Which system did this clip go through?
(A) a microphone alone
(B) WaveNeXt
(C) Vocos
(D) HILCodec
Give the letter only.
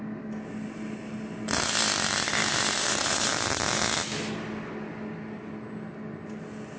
A